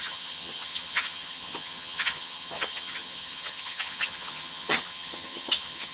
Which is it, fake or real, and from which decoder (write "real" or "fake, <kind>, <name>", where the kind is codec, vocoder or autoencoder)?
fake, vocoder, HiFi-GAN